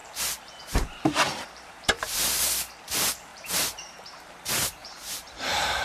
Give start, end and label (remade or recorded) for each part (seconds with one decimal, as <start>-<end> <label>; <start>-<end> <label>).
0.0-2.4 remade; 2.4-3.3 recorded; 3.3-4.3 remade; 4.3-4.8 recorded; 4.8-5.8 remade

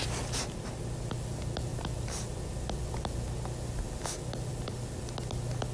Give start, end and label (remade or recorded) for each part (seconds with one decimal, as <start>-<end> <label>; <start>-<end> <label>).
0.0-0.8 remade; 0.8-5.7 recorded

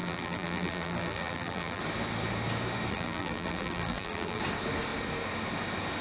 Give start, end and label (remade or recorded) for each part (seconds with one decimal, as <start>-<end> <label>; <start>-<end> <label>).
0.0-1.8 remade; 1.8-2.9 recorded; 2.9-4.4 remade; 4.4-6.0 recorded

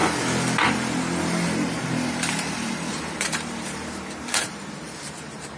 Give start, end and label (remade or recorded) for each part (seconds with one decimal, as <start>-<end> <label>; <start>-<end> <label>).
0.0-0.6 recorded; 0.6-5.6 remade

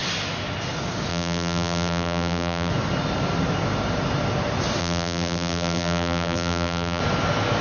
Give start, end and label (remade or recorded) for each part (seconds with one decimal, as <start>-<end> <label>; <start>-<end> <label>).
0.0-1.1 recorded; 1.1-2.7 remade; 2.7-4.8 recorded; 4.8-7.0 remade; 7.0-7.6 recorded

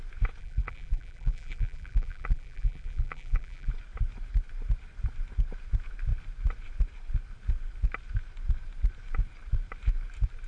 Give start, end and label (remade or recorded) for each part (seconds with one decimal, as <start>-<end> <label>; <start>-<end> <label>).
0.0-0.4 recorded; 0.4-3.7 remade; 3.7-10.5 recorded

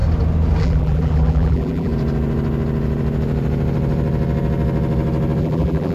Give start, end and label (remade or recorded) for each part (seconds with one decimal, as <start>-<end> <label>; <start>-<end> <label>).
0.0-0.6 recorded; 0.6-1.9 remade; 1.9-5.4 recorded; 5.4-5.9 remade

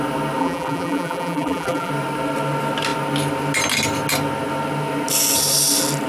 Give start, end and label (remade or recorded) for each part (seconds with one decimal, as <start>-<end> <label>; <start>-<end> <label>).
0.0-0.4 recorded; 0.4-1.9 remade; 1.9-6.1 recorded